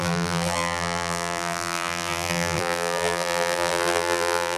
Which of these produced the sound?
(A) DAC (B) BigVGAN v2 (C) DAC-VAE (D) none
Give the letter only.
B